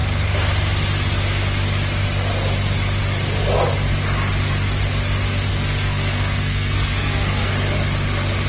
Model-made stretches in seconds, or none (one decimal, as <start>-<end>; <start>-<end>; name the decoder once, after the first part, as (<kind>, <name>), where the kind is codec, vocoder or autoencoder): 5.5-7.5 (codec, SNAC)